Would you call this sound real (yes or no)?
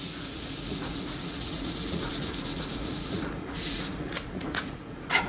no